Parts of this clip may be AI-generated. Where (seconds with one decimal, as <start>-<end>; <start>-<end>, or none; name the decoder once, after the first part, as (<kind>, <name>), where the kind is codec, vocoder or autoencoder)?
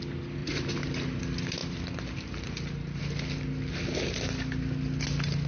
0.4-1.2 (vocoder, BigVGAN v2)